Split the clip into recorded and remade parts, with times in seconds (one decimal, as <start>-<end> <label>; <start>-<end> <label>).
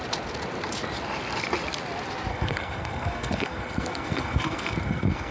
0.0-2.3 recorded; 2.3-5.3 remade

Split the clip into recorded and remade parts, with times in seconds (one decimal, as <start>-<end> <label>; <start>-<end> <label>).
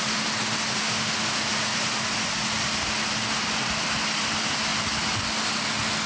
0.0-0.8 recorded; 0.8-1.5 remade; 1.5-6.1 recorded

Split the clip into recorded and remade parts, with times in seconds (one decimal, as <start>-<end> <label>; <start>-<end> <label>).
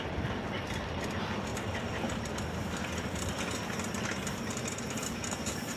0.0-1.5 recorded; 1.5-2.2 remade; 2.2-5.8 recorded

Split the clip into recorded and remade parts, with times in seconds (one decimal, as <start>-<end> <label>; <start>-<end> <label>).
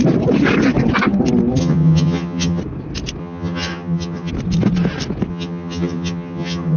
0.0-1.6 recorded; 1.6-2.6 remade; 2.6-3.2 recorded; 3.2-4.3 remade; 4.3-5.3 recorded; 5.3-6.8 remade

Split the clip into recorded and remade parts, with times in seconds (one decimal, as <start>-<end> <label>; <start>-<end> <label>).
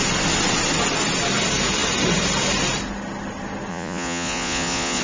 0.0-3.7 recorded; 3.7-5.0 remade